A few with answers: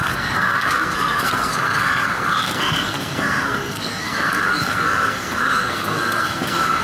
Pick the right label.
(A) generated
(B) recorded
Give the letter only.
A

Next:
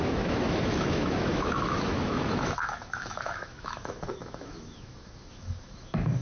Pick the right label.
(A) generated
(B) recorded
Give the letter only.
A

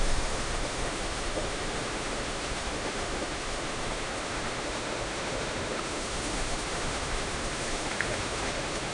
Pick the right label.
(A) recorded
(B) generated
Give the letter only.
B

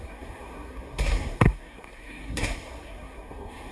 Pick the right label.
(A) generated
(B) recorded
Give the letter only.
A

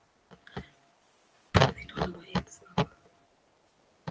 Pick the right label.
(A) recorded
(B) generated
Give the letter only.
A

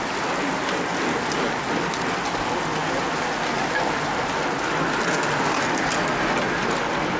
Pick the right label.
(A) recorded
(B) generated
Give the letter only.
A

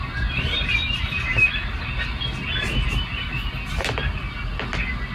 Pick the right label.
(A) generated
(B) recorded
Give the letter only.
B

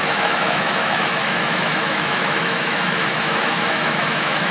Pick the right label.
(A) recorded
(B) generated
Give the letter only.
B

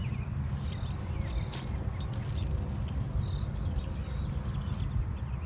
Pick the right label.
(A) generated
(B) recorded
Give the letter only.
B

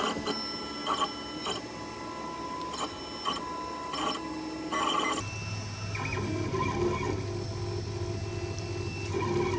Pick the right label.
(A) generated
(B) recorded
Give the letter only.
B